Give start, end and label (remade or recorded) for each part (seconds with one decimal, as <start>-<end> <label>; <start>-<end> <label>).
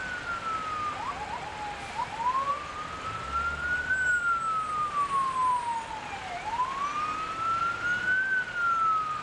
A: 0.0-9.2 recorded